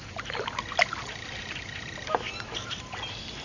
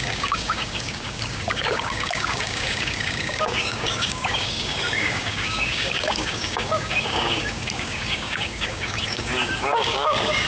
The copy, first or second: second